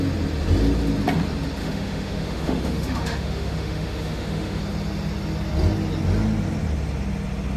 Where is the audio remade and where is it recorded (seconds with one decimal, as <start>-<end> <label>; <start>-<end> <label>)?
0.0-1.6 recorded; 1.6-4.6 remade; 4.6-7.6 recorded